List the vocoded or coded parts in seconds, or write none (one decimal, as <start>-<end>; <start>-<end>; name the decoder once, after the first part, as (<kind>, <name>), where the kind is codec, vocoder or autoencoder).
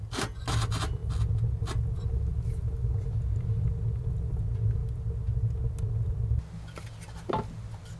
none